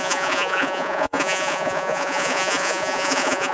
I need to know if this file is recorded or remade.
remade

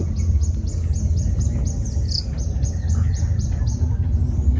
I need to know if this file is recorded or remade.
recorded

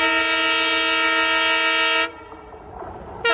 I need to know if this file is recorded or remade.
recorded